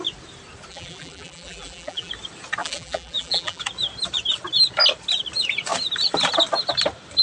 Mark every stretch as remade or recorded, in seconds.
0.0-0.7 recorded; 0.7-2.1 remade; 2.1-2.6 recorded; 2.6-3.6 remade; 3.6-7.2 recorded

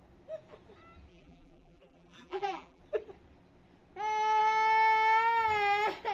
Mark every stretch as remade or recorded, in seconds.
0.0-1.1 recorded; 1.1-2.8 remade; 2.8-6.1 recorded

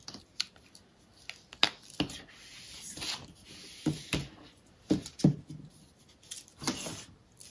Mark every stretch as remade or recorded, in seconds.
0.0-4.2 recorded; 4.2-4.7 remade; 4.7-7.5 recorded

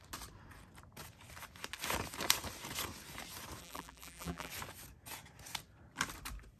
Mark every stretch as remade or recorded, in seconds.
0.0-3.6 recorded; 3.6-4.5 remade; 4.5-6.6 recorded

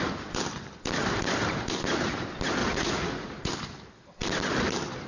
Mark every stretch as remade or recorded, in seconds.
0.0-2.6 recorded; 2.6-3.5 remade; 3.5-5.1 recorded

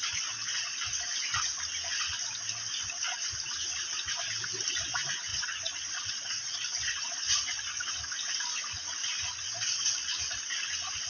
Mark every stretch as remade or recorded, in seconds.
0.0-5.3 recorded; 5.3-7.9 remade; 7.9-11.1 recorded

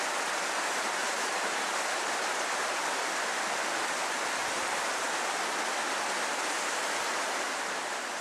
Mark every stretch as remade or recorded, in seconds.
0.0-1.0 recorded; 1.0-1.8 remade; 1.8-8.2 recorded

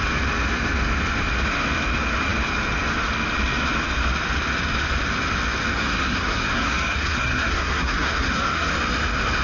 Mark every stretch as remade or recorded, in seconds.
0.0-5.7 recorded; 5.7-8.7 remade; 8.7-9.4 recorded